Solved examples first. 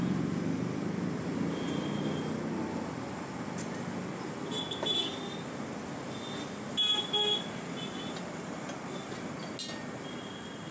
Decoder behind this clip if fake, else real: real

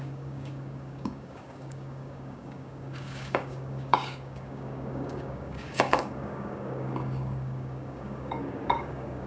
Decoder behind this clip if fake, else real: fake, codec, DAC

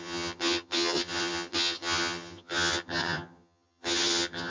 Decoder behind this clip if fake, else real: fake, vocoder, HiFi-GAN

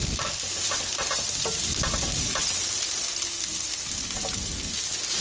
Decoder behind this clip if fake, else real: real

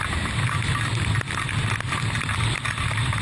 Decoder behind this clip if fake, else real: real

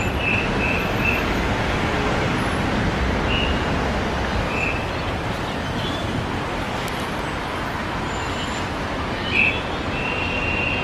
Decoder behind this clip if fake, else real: real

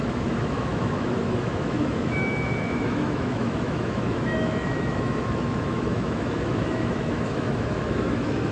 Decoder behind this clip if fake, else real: fake, autoencoder, DAC-VAE